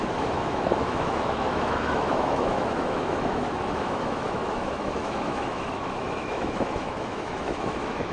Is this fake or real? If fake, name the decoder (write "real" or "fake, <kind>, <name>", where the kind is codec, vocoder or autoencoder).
fake, autoencoder, DAC-VAE